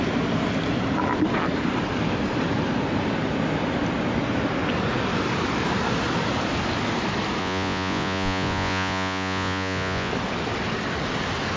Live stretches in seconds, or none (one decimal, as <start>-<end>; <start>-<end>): 0.0-7.4; 10.1-11.6